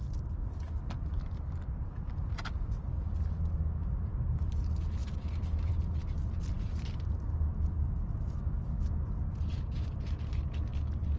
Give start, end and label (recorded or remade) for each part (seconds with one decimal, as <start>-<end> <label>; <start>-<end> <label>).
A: 0.0-11.2 recorded